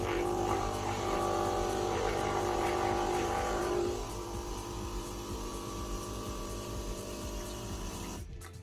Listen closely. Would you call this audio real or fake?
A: fake